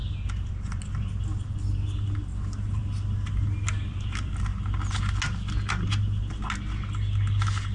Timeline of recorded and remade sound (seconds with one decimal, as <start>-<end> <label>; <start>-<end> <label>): 0.0-7.7 recorded